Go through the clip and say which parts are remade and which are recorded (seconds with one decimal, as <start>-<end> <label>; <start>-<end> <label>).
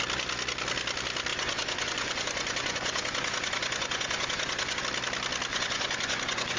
0.0-1.3 recorded; 1.3-4.8 remade; 4.8-5.5 recorded; 5.5-6.6 remade